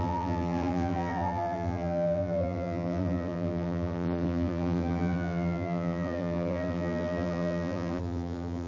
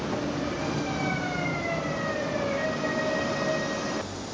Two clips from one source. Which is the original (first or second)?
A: second